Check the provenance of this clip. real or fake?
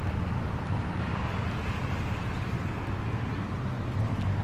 real